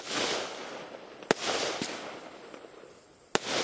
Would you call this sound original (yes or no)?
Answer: yes